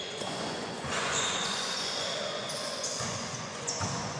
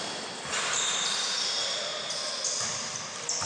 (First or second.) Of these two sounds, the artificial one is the first